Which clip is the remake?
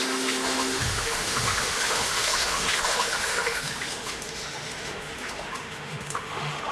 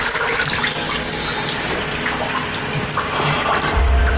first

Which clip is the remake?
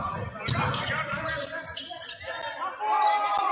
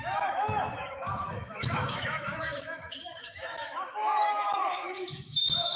second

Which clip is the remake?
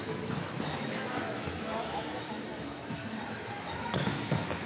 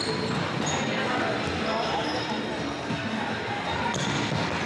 first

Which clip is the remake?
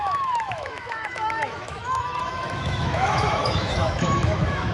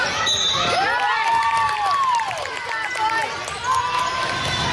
first